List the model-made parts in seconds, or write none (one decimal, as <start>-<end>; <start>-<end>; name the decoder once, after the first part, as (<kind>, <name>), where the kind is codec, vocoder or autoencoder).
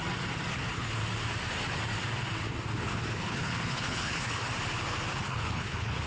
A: 0.5-1.0 (codec, HILCodec); 2.8-4.5; 5.2-6.1